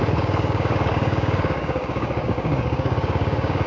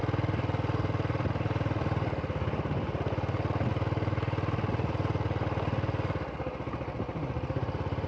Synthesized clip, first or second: first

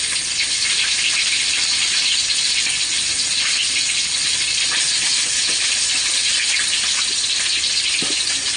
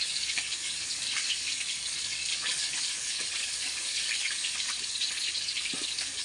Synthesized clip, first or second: second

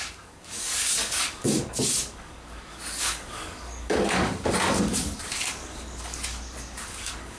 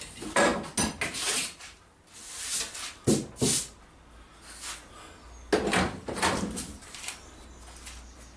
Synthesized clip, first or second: first